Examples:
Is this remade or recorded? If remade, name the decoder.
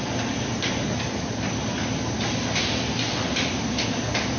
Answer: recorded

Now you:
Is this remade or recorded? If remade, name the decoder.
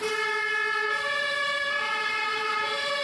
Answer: recorded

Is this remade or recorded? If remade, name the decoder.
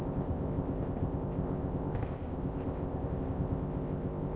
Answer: remade, codec, ZipCodec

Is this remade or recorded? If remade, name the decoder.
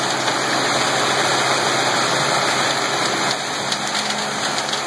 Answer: recorded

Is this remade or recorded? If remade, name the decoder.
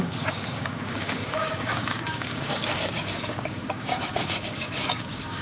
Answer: remade, codec, DAC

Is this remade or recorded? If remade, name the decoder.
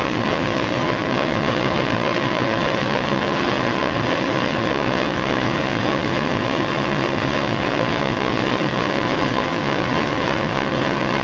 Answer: remade, vocoder, WaveNeXt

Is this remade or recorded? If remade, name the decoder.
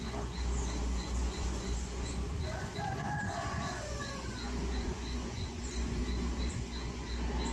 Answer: remade, vocoder, Vocos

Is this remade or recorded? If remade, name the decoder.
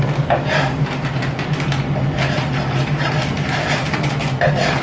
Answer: recorded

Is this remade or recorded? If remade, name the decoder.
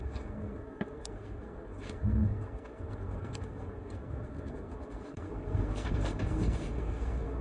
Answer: remade, codec, SNAC